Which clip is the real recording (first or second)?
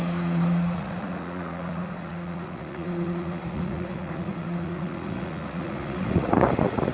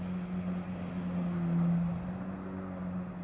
second